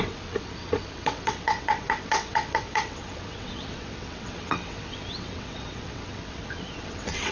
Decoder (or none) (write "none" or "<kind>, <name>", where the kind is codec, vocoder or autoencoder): vocoder, WaveNeXt